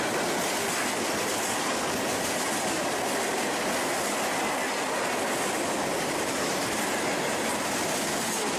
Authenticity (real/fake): real